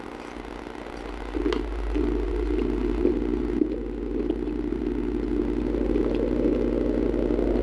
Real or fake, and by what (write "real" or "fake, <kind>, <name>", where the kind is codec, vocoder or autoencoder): real